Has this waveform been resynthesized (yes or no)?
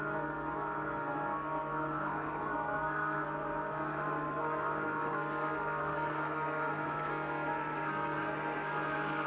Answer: yes